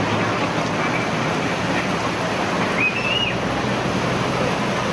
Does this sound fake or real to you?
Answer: real